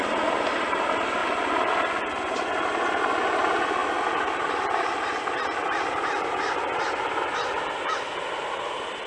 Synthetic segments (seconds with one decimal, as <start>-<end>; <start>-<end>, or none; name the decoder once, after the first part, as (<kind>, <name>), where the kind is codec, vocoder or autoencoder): none